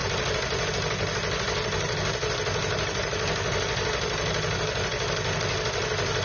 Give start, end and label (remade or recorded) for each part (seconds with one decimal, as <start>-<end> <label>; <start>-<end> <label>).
0.0-6.2 recorded